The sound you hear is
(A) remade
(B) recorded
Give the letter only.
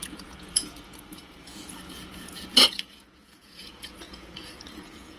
A